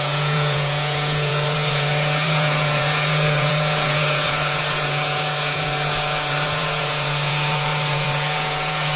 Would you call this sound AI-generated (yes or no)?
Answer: yes